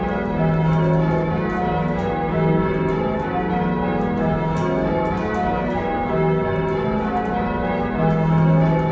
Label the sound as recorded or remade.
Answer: recorded